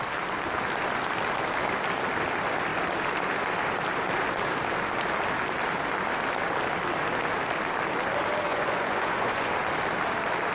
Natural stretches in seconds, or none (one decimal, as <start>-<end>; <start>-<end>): 0.0-8.5; 9.5-10.5